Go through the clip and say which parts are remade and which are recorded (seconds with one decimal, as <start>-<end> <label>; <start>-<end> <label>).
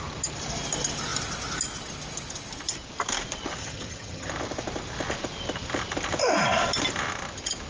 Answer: 0.0-3.6 recorded; 3.6-4.3 remade; 4.3-7.7 recorded